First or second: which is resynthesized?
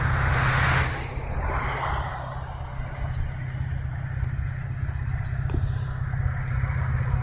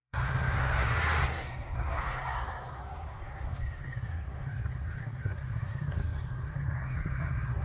second